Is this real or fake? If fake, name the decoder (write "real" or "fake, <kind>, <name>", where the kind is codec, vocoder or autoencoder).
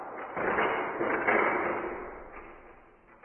real